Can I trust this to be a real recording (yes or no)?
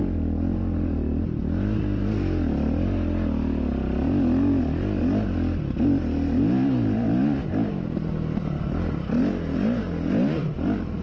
yes